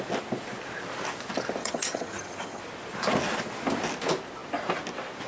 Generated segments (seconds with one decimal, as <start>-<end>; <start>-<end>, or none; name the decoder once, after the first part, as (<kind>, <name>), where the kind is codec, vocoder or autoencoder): 1.6-2.6 (vocoder, HiFi-GAN)